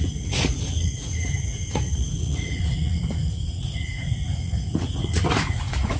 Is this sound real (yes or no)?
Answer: no